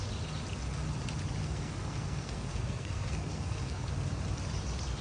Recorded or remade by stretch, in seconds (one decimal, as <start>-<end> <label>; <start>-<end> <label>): 0.0-1.4 recorded; 1.4-3.9 remade; 3.9-5.0 recorded

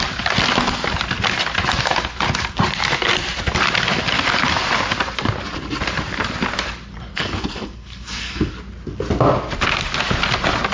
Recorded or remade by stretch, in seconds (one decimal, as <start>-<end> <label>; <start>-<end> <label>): 0.0-7.1 recorded; 7.1-8.5 remade; 8.5-10.7 recorded

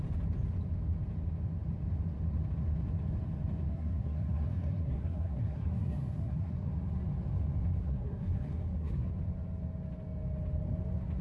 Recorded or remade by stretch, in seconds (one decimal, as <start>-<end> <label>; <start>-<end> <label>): 0.0-3.7 recorded; 3.7-6.7 remade; 6.7-7.8 recorded; 7.8-9.1 remade; 9.1-11.2 recorded

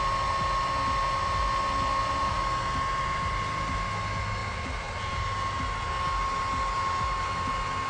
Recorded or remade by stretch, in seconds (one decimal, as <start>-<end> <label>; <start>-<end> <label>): 0.0-7.9 recorded